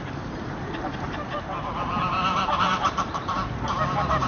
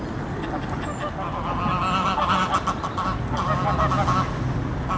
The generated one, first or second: first